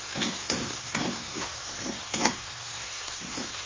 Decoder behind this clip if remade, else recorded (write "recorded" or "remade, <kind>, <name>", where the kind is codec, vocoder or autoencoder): remade, codec, SNAC